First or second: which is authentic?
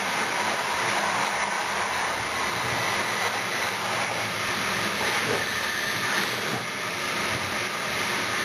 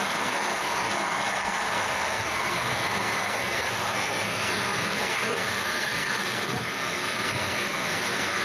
first